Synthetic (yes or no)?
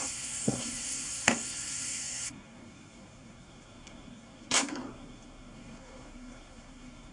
yes